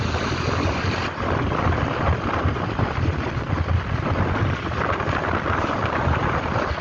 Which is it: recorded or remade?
recorded